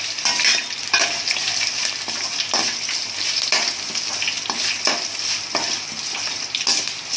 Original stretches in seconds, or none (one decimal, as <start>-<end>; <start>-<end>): 0.0-7.2